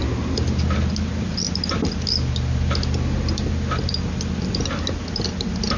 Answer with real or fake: real